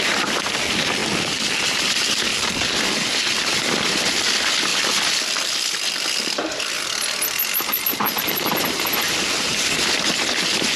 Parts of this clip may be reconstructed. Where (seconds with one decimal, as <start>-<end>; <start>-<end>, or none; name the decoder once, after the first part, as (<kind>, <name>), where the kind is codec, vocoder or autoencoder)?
0.0-1.0 (vocoder, BigVGAN v2); 1.7-2.3; 3.4-10.8